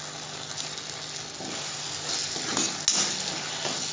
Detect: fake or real real